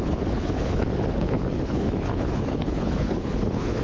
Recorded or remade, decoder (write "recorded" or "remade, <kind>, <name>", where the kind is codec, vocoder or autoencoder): remade, codec, HILCodec